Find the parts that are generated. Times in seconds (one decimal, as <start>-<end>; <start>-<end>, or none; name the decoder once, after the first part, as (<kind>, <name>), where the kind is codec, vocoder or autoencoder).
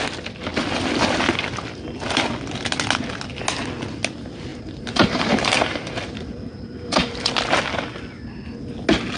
4.5-7.3 (vocoder, BigVGAN v2)